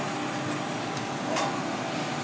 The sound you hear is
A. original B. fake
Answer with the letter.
A